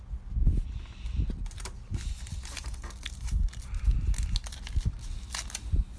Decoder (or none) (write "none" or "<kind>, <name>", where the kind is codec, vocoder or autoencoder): none